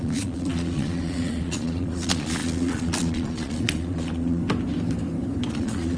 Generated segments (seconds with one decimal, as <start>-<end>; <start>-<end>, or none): 0.0-4.4; 5.5-6.0